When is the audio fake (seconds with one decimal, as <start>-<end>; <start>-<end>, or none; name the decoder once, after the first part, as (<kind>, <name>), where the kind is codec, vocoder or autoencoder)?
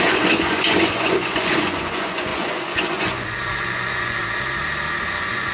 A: 0.0-4.2 (vocoder, Vocos); 5.1-5.5